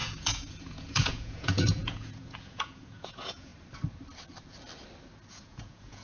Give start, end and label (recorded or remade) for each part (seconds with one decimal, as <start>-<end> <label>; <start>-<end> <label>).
0.0-3.5 remade; 3.5-5.3 recorded; 5.3-6.0 remade